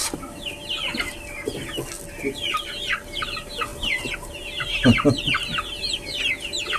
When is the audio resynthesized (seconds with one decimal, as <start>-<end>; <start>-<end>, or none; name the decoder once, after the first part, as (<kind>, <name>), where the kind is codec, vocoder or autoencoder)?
none